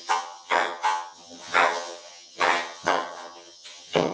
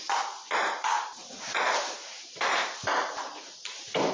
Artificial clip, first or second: first